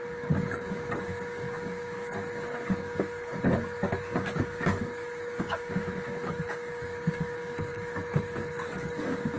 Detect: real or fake fake